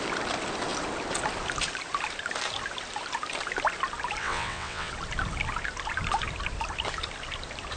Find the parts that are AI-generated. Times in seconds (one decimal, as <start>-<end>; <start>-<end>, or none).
4.2-4.9